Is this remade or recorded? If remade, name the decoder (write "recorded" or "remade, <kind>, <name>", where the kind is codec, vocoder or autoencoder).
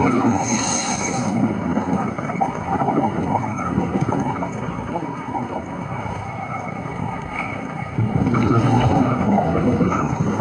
remade, codec, SNAC